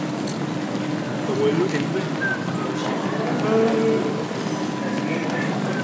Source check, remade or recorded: recorded